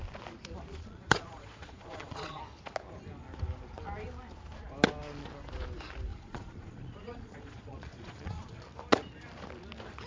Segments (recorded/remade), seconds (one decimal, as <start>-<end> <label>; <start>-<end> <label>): 0.0-0.7 recorded; 0.7-2.4 remade; 2.4-6.1 recorded; 6.1-8.6 remade; 8.6-10.1 recorded